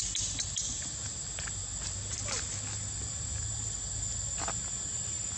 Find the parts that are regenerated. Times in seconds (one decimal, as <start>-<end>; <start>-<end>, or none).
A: none